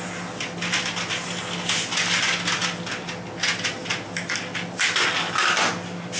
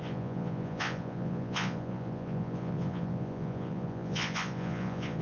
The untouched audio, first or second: first